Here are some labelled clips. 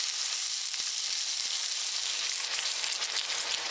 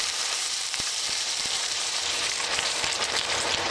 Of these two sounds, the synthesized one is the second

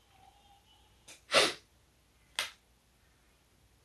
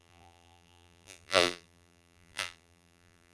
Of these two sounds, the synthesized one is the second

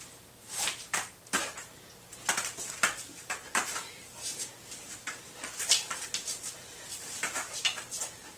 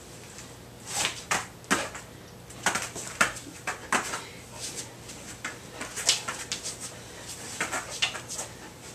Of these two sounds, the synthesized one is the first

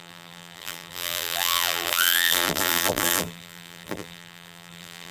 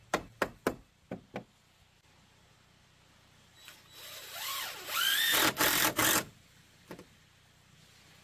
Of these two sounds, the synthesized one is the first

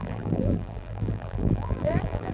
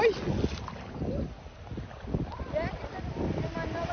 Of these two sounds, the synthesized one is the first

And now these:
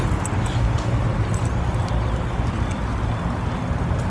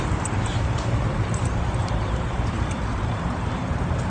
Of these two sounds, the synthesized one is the second